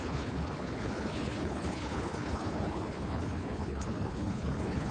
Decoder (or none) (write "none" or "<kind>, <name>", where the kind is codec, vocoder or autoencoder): codec, HILCodec